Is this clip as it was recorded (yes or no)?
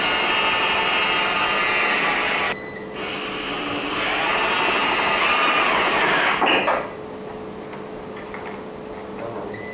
yes